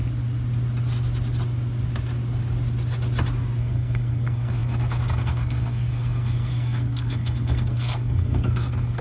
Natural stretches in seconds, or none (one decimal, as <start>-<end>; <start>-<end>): 0.0-3.6